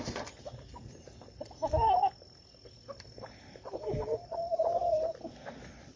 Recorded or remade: recorded